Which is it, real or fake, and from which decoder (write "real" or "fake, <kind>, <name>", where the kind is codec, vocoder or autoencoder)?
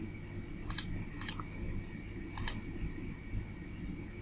real